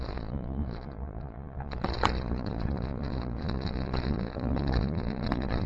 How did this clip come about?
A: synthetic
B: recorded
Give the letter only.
A